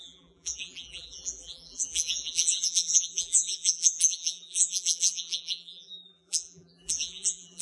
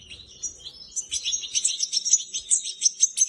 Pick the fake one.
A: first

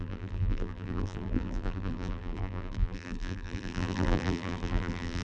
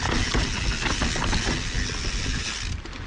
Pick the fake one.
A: first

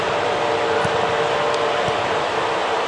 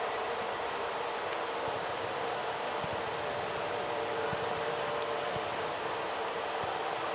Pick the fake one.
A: second